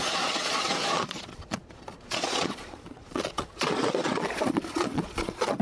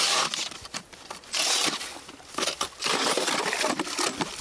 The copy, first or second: first